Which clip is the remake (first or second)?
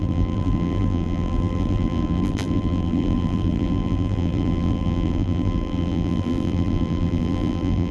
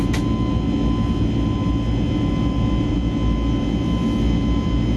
first